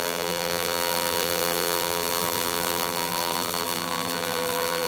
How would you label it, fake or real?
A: fake